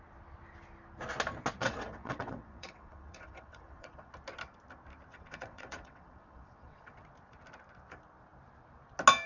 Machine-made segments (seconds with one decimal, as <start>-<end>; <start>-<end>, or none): 1.6-4.1; 5.1-6.9